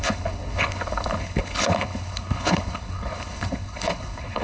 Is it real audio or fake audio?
fake